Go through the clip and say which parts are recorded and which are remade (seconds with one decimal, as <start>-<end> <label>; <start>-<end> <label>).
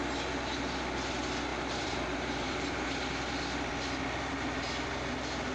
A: 0.0-1.5 recorded; 1.5-2.9 remade; 2.9-5.5 recorded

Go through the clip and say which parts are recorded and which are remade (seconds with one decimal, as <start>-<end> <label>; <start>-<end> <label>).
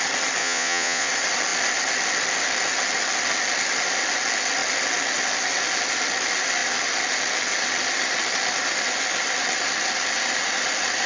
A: 0.0-0.4 recorded; 0.4-1.1 remade; 1.1-11.1 recorded